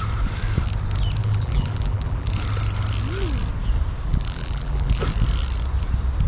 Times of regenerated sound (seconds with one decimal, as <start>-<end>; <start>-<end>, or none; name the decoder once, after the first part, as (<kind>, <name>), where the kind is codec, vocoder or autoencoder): 1.2-2.3 (vocoder, BigVGAN v2); 4.1-5.0